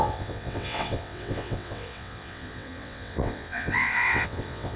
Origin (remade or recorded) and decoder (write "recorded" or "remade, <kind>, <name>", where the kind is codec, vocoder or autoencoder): remade, vocoder, WaveNeXt